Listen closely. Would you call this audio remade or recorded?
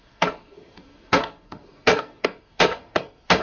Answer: remade